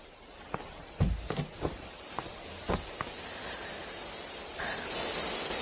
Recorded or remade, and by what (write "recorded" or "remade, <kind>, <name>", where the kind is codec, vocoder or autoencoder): recorded